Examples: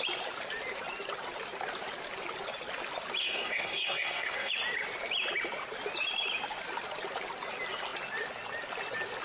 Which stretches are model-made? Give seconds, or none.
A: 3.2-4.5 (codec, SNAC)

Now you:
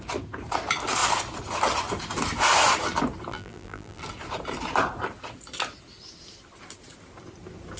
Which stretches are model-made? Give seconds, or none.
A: 3.3-4.0 (vocoder, BigVGAN v2)

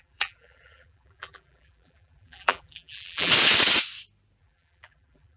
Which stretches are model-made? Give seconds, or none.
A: 0.0-3.3 (vocoder, BigVGAN v2); 4.4-5.4

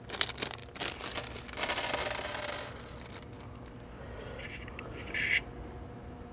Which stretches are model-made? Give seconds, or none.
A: none

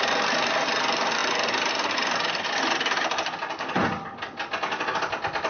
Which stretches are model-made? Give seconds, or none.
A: none

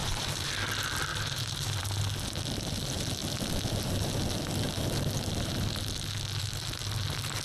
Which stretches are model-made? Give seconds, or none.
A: 0.0-0.5 (vocoder, BigVGAN v2); 1.1-1.8